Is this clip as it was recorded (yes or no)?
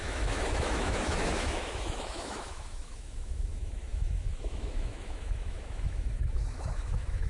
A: no